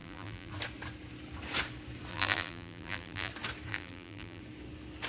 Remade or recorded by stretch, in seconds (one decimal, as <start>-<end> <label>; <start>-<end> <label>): 0.0-0.5 remade; 0.5-2.1 recorded; 2.1-3.3 remade; 3.3-3.7 recorded; 3.7-4.4 remade; 4.4-5.1 recorded